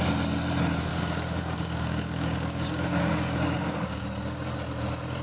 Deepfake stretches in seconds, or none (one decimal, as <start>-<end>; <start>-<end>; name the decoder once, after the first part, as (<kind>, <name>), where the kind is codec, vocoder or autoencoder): 0.9-4.0 (codec, DAC)